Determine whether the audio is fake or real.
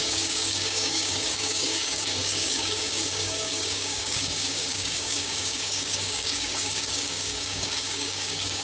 fake